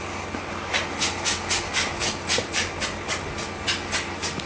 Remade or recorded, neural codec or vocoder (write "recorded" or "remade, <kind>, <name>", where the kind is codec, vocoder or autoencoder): recorded